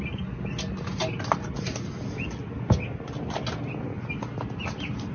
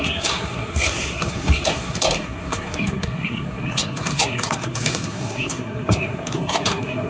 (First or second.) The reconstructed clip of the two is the second